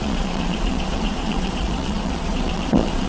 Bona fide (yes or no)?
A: no